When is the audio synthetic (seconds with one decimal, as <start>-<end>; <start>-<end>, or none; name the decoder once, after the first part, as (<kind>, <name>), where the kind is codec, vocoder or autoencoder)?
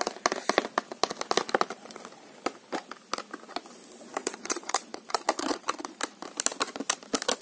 4.2-6.0 (vocoder, Vocos)